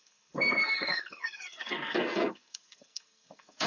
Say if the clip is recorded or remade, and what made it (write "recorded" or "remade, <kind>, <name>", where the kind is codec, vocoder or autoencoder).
remade, codec, SNAC